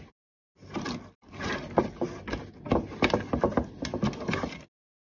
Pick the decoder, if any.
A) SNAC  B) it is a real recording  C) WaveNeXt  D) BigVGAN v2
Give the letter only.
B